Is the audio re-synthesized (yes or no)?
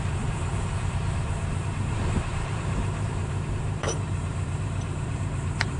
yes